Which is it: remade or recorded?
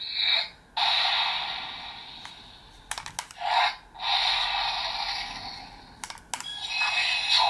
recorded